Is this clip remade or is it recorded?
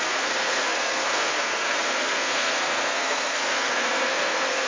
remade